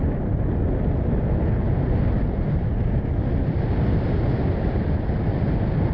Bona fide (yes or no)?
yes